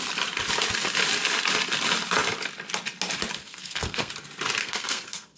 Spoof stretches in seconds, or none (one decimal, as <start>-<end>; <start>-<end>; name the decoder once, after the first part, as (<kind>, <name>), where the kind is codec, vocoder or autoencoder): 3.4-4.1 (codec, SNAC); 4.6-5.4